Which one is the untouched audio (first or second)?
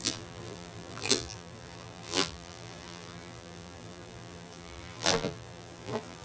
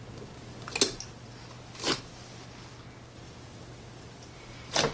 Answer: second